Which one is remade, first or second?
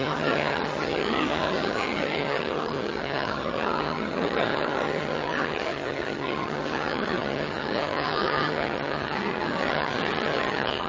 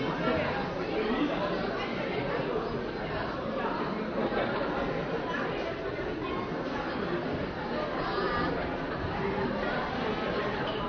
first